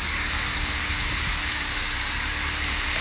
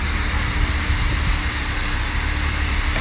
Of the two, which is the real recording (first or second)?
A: second